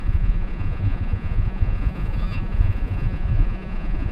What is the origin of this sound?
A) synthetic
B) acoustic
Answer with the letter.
A